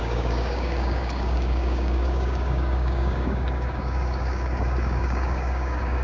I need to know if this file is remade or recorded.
remade